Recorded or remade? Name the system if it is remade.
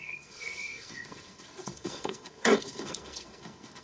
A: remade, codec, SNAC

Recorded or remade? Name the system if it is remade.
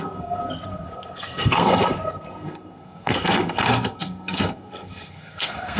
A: remade, codec, SNAC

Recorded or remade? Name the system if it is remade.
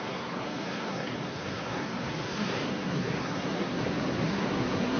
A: remade, codec, SNAC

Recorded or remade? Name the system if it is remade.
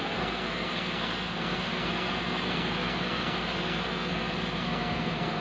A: remade, codec, SNAC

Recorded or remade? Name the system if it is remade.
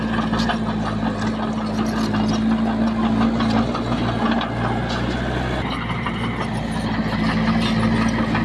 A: recorded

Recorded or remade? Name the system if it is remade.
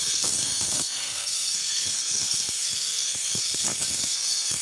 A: remade, codec, SNAC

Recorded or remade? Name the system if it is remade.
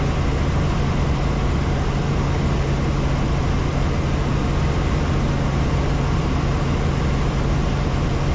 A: recorded